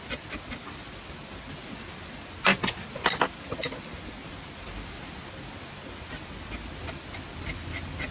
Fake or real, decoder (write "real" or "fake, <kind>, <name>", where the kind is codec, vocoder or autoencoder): real